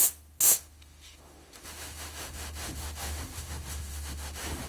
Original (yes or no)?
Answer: no